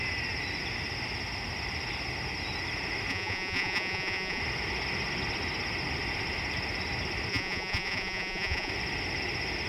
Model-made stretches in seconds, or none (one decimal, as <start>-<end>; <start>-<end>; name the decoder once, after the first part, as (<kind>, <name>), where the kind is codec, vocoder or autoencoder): 3.1-4.4 (vocoder, Vocos); 7.3-8.7